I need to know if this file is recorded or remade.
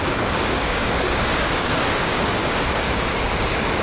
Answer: remade